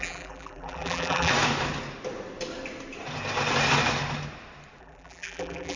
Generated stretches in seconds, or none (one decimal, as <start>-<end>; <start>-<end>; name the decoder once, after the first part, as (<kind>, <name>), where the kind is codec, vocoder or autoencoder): 0.0-1.3 (vocoder, BigVGAN v2); 4.8-5.8